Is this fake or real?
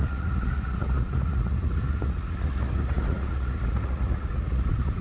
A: fake